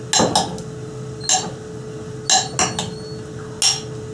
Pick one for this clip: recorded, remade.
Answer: recorded